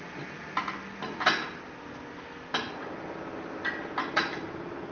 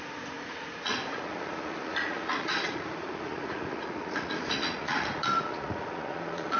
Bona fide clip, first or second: first